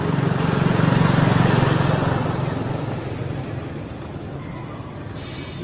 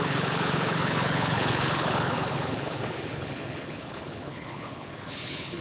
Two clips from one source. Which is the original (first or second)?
first